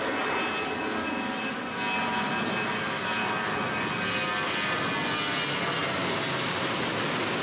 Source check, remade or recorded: recorded